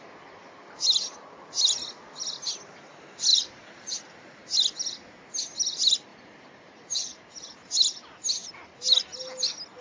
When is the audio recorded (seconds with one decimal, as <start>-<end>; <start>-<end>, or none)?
0.0-3.3; 4.0-6.1; 7.7-9.8